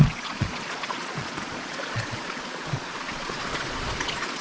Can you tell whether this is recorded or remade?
remade